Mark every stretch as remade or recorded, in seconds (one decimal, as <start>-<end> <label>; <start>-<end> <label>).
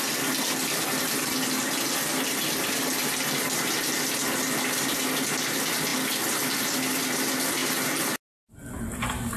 0.0-9.4 recorded